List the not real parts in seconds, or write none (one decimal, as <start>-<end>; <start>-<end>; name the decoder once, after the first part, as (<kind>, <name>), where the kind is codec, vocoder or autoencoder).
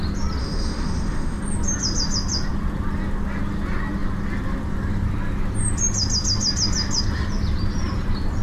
0.4-1.4 (autoencoder, DAC-VAE)